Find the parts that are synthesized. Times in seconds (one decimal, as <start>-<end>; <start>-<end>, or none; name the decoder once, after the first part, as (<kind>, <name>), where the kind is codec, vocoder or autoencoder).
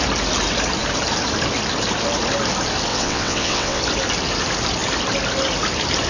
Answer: 2.9-3.8 (vocoder, WaveNeXt)